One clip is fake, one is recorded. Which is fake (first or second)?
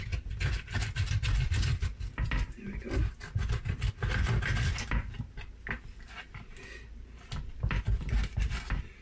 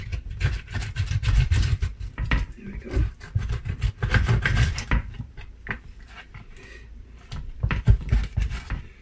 second